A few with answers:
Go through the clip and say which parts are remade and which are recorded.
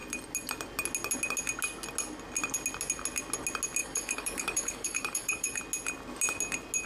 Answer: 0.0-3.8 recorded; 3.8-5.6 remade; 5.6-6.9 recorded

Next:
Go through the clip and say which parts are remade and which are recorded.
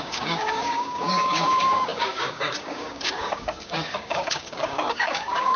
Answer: 0.0-5.6 remade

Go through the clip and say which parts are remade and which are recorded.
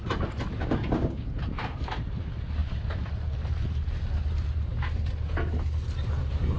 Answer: 0.0-0.6 recorded; 0.6-1.3 remade; 1.3-6.6 recorded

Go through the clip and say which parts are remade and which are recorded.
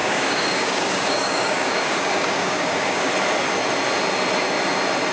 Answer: 0.0-3.1 remade; 3.1-5.1 recorded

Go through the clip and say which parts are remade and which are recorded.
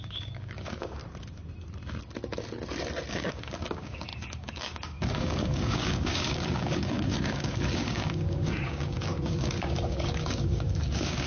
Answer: 0.0-1.0 remade; 1.0-3.1 recorded; 3.1-11.3 remade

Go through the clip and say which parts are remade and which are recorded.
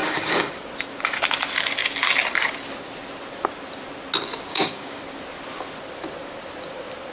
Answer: 0.0-0.6 remade; 0.6-4.5 recorded; 4.5-5.0 remade; 5.0-7.1 recorded